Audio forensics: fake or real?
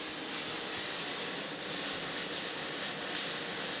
real